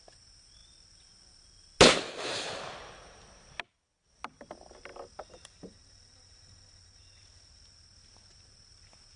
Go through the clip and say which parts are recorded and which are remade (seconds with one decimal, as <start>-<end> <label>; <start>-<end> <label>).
0.0-9.2 recorded